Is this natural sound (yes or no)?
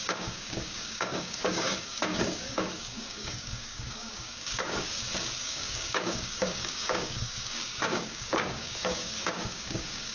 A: no